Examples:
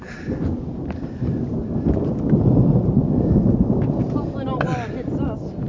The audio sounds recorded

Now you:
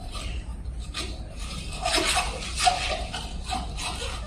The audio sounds recorded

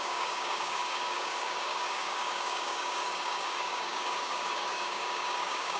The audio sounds remade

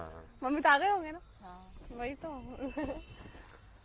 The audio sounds recorded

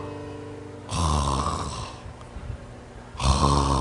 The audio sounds recorded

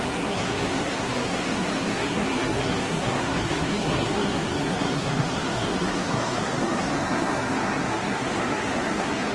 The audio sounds remade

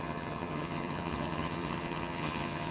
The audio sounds remade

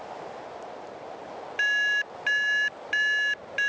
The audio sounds recorded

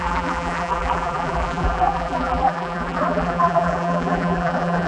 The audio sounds remade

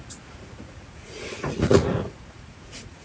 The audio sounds remade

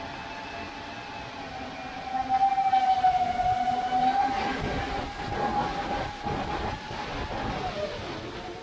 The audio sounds recorded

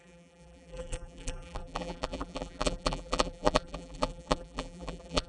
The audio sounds remade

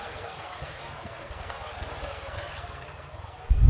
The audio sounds remade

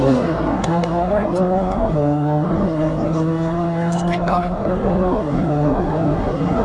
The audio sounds remade